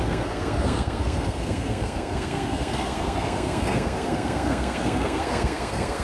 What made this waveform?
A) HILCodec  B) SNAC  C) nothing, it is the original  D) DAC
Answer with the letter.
B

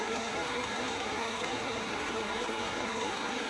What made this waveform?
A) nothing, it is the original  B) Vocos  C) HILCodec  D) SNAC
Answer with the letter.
D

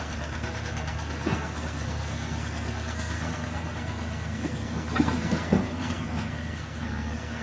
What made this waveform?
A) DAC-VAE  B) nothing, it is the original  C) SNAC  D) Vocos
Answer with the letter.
C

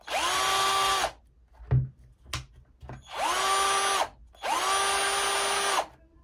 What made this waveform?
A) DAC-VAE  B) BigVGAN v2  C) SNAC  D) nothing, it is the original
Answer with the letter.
D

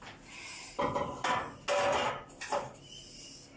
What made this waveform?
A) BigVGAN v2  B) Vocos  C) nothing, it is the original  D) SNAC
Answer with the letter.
C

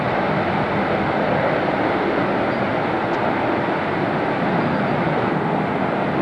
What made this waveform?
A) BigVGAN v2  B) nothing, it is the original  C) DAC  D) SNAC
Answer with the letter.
B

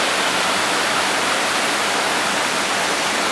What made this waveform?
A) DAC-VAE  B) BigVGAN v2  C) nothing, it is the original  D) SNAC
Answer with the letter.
C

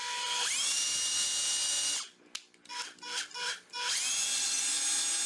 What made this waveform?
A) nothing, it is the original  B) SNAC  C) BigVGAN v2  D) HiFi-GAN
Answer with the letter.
A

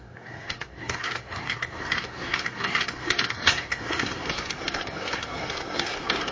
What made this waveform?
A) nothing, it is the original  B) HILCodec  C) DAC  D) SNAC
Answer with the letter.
D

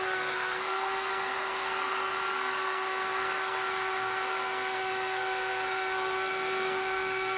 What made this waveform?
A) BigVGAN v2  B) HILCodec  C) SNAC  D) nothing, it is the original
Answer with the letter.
C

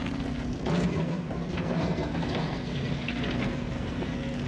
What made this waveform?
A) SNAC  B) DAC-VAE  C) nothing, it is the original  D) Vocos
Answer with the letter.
A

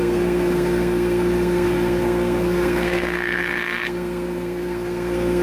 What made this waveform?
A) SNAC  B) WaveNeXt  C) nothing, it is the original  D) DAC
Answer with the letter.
A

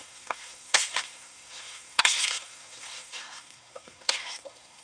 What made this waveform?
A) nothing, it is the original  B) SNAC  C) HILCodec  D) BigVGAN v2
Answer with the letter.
B